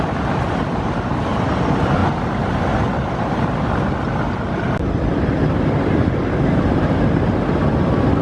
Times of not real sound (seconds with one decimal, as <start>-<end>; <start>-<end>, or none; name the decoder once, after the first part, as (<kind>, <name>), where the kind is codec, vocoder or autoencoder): none